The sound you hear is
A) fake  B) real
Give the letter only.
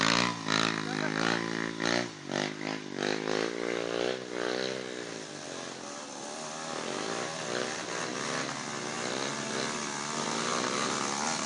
B